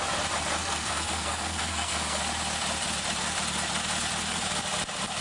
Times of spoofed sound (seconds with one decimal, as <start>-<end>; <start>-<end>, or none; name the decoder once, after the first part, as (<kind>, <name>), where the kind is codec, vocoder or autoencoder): 0.6-2.2 (codec, SNAC)